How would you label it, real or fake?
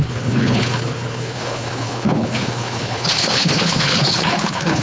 fake